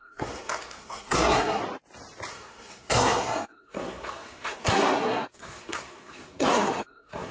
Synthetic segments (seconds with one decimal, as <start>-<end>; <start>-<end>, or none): 0.0-1.6; 2.3-7.3